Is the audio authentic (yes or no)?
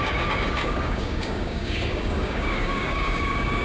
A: no